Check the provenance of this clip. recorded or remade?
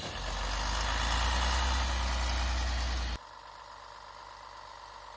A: recorded